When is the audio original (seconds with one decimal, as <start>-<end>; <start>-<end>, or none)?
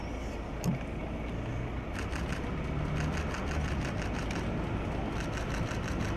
0.0-6.2